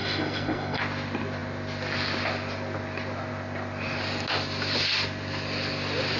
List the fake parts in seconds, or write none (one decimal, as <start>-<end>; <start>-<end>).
0.0-0.8